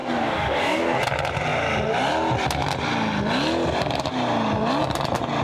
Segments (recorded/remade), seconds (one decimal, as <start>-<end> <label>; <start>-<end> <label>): 0.0-1.0 remade; 1.0-5.4 recorded